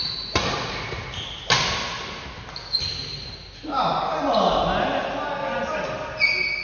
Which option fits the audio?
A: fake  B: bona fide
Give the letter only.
B